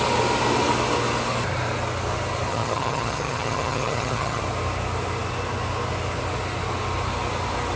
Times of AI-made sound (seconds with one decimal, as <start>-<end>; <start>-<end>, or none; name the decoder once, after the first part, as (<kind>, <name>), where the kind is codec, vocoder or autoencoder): 2.5-4.4 (vocoder, HiFi-GAN)